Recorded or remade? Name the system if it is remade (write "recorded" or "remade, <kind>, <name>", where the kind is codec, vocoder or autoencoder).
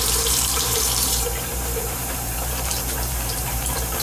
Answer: remade, vocoder, BigVGAN v2